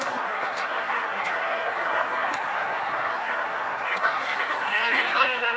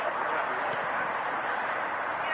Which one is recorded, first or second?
second